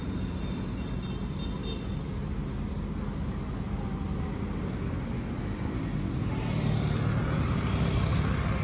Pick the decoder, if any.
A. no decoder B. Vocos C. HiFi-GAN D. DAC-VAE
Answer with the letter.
A